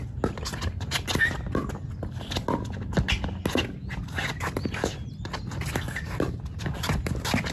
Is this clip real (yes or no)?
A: yes